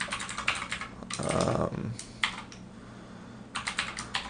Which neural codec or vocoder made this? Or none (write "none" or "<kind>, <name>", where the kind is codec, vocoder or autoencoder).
none